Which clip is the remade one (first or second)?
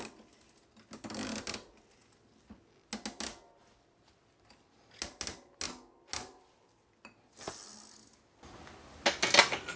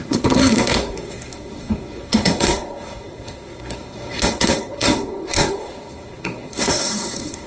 second